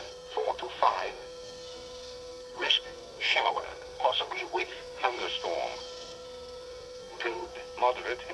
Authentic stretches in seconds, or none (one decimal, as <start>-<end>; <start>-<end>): 5.2-5.8; 7.5-8.3